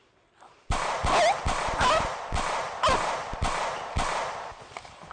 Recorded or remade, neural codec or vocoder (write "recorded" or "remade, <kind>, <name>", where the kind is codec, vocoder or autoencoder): recorded